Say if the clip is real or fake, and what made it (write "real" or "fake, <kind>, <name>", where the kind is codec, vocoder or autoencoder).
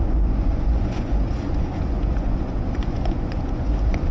fake, vocoder, Vocos